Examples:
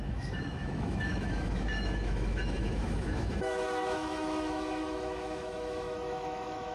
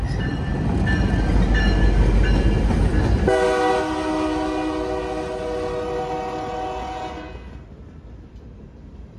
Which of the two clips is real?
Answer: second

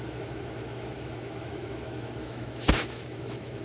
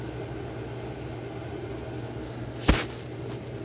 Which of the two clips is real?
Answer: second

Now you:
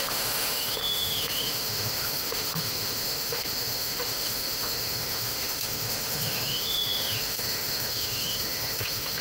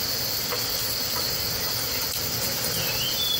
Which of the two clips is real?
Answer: second